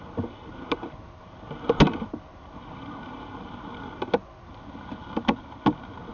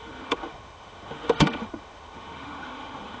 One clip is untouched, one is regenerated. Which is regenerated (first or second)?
second